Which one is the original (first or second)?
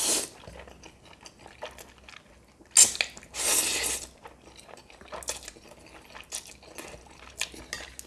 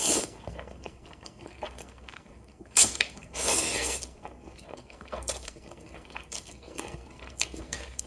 first